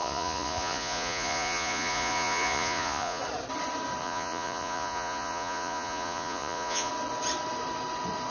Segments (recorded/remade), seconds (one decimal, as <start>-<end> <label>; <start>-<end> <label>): 0.0-3.2 remade; 3.2-4.0 recorded; 4.0-6.9 remade; 6.9-8.3 recorded